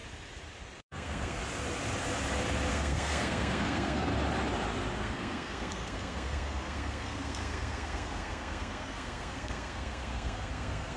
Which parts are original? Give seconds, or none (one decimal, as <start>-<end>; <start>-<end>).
0.0-0.8; 1.4-2.7; 4.1-5.0